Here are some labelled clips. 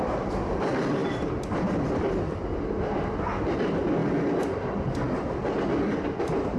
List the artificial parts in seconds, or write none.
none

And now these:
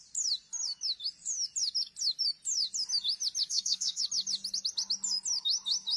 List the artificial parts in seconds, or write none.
3.5-4.0

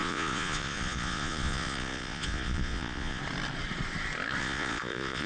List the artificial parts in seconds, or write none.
0.0-3.2; 4.4-5.3

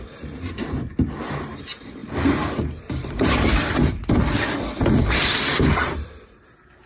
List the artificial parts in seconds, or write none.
2.0-6.1

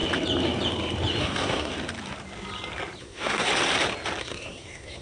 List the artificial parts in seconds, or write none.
1.2-1.7; 3.0-3.5; 4.2-5.0

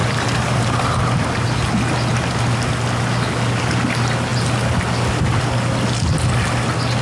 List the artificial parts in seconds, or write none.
0.0-1.0